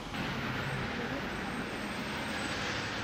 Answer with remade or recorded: recorded